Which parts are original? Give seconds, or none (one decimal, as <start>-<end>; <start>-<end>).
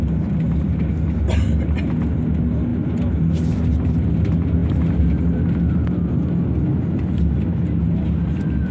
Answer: 0.0-8.7